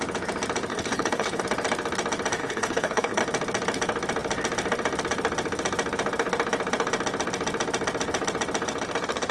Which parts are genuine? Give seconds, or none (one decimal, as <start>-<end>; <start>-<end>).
0.0-0.7; 1.4-2.4; 3.2-9.3